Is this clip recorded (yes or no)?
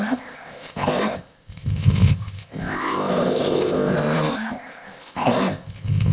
no